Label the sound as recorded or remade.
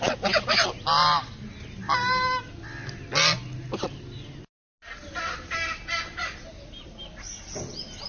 recorded